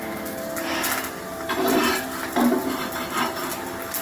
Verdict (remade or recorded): recorded